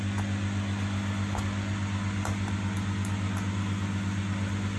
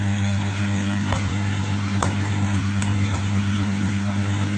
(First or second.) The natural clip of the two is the first